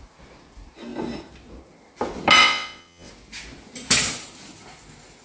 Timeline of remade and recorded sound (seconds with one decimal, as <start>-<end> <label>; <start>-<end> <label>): 0.0-2.4 recorded; 2.4-3.1 remade; 3.1-5.2 recorded